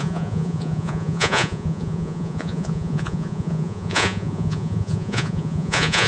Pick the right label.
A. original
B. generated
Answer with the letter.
B